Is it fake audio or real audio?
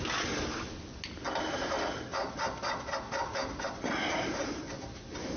real